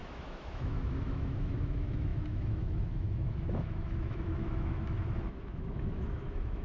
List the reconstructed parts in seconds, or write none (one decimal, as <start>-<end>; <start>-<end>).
0.0-6.6